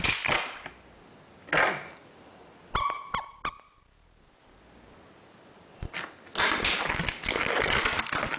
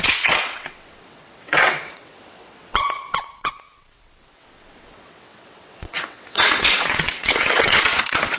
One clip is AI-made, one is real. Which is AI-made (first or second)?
second